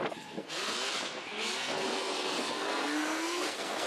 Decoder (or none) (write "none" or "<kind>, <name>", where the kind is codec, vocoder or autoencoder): codec, SNAC